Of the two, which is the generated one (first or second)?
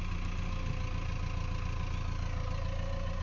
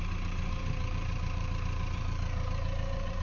second